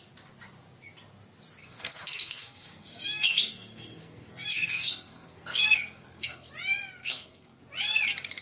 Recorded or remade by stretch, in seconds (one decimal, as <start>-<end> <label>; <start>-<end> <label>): 0.0-1.6 recorded; 1.6-6.5 remade; 6.5-7.0 recorded; 7.0-7.6 remade; 7.6-8.4 recorded